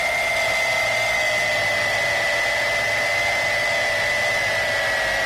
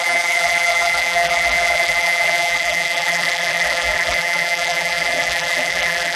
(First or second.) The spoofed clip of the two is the second